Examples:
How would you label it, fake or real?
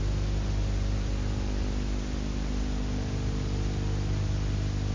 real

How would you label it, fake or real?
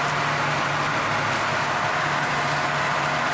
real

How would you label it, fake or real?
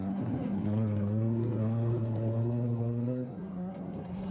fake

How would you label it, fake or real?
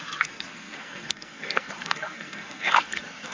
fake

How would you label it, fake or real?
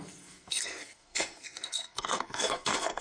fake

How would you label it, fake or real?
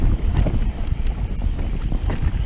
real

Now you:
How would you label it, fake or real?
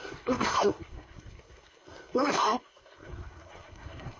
fake